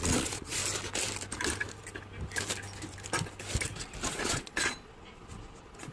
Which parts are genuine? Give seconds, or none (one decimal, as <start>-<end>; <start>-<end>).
0.6-4.1

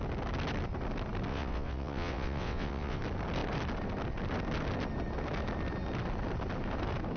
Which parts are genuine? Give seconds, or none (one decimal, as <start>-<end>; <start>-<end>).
0.0-1.3; 3.0-7.2

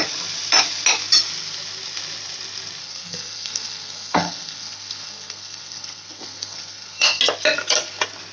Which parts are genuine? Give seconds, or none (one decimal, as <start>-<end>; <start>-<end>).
0.0-2.8; 7.2-8.3

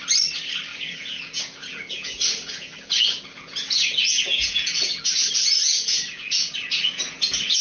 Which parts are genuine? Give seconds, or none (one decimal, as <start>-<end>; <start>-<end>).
0.0-0.7; 5.1-5.6

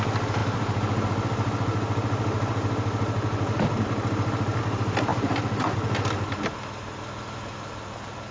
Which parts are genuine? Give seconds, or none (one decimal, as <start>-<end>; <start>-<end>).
0.0-8.3

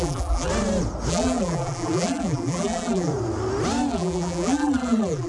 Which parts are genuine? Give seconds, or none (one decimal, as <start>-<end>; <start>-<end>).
0.5-1.1; 3.1-3.9

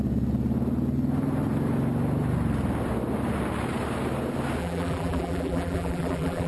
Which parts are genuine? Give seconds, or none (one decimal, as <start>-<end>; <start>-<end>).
0.0-4.6

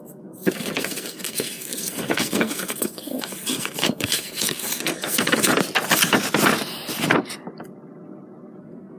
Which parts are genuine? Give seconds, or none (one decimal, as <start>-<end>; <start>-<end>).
5.5-8.6